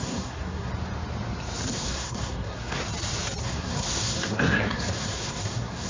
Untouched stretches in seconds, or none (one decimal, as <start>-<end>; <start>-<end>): 0.7-1.7; 2.8-3.4